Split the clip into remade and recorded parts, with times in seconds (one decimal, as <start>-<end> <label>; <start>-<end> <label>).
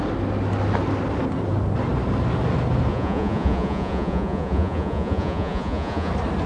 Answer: 0.0-2.9 recorded; 2.9-6.1 remade; 6.1-6.5 recorded